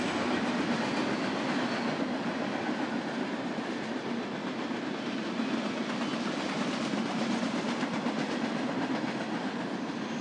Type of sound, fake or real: real